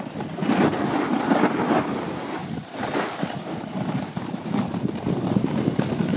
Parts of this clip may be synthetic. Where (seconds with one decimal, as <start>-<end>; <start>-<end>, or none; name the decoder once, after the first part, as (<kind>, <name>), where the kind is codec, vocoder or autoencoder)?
none